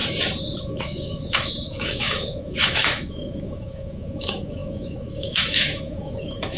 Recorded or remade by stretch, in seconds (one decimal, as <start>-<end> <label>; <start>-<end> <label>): 0.0-0.6 recorded; 0.6-6.6 remade